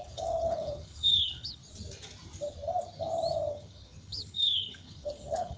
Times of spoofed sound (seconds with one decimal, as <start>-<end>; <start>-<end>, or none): 0.0-1.6; 3.5-5.6